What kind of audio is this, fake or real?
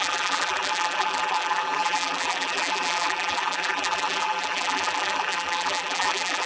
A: fake